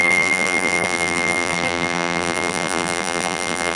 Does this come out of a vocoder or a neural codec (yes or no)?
yes